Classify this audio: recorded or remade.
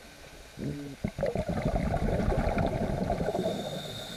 recorded